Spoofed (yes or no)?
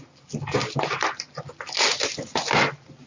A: no